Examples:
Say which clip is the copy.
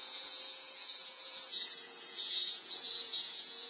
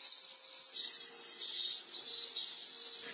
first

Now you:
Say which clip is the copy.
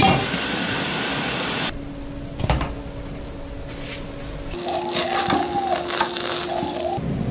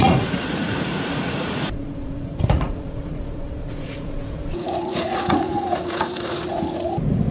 second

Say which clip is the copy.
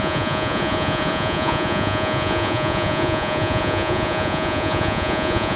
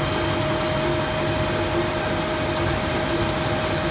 first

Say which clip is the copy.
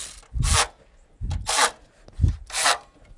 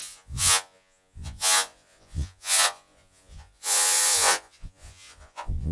second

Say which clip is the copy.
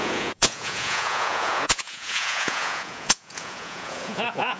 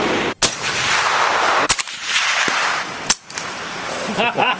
first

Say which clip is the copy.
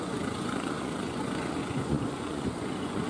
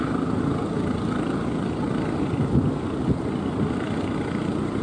first